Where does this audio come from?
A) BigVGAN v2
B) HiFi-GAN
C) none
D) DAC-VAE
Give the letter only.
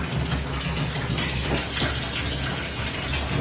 C